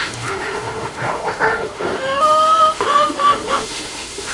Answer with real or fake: fake